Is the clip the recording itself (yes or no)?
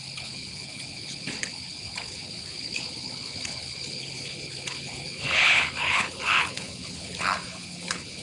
no